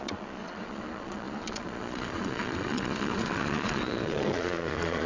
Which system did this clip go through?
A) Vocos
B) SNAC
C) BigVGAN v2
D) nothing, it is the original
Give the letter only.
A